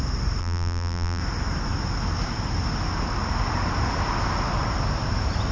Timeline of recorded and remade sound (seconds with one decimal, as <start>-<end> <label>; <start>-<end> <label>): 0.0-0.4 recorded; 0.4-1.2 remade; 1.2-5.5 recorded